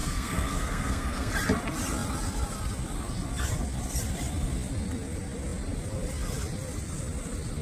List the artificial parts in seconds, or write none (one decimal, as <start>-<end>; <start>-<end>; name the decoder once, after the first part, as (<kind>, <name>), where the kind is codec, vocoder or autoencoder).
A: 0.0-1.3 (codec, SNAC)

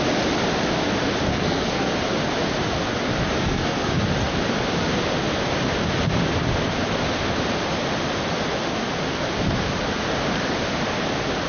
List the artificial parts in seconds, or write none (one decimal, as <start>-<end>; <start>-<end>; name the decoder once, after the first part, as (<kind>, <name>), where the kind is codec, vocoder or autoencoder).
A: 1.3-1.9 (codec, SNAC); 3.4-4.0